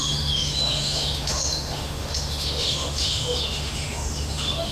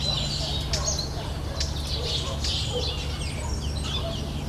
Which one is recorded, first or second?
second